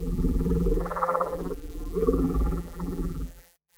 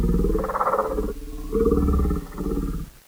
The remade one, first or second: first